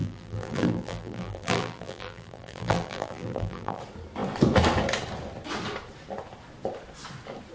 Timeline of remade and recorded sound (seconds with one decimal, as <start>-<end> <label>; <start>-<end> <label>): 0.0-3.8 remade; 3.8-7.5 recorded